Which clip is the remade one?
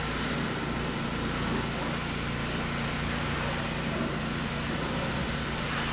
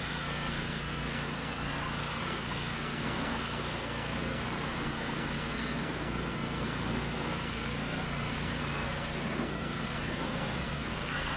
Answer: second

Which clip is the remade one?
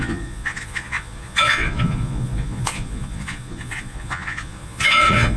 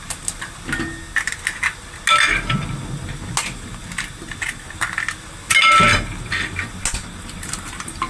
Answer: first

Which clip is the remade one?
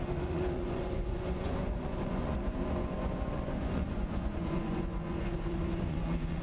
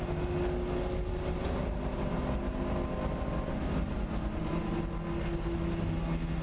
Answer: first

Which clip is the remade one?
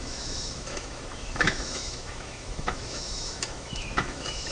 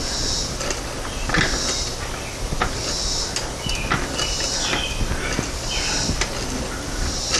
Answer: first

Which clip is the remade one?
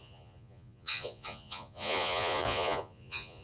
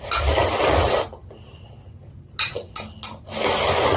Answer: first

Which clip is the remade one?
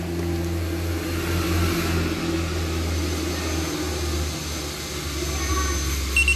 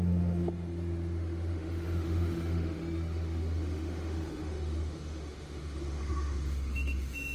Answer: second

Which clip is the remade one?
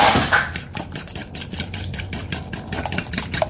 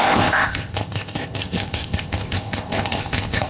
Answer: second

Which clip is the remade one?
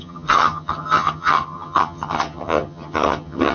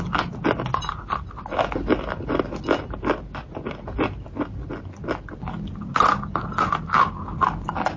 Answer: first